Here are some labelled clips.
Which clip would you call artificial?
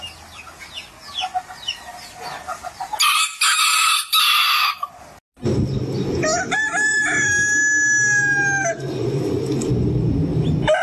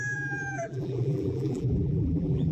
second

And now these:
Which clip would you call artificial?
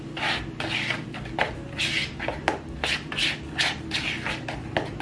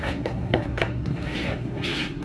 second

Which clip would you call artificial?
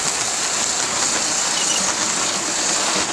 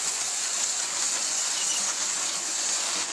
second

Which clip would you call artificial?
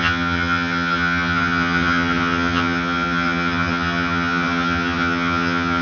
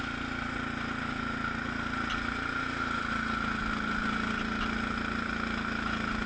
first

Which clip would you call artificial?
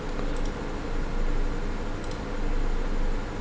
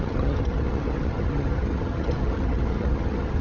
second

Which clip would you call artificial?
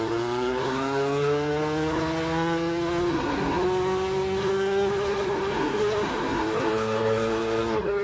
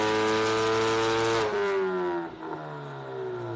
first